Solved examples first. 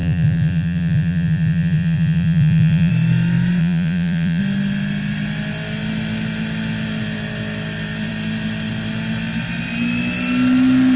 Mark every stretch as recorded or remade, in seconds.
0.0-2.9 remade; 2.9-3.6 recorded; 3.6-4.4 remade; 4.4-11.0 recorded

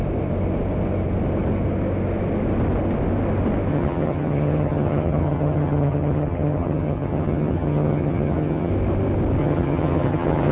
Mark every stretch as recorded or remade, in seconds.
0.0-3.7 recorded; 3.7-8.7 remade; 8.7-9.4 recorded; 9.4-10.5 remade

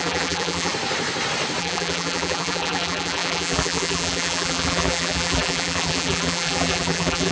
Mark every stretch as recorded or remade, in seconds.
0.0-0.7 remade; 0.7-1.6 recorded; 1.6-7.3 remade